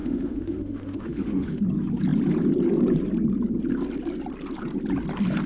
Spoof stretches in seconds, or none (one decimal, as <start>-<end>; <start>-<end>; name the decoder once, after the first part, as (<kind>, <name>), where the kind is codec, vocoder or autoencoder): 0.0-1.6 (autoencoder, DAC-VAE)